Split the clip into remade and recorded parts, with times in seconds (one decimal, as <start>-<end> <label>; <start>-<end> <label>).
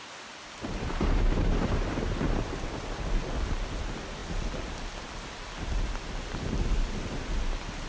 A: 0.0-7.9 recorded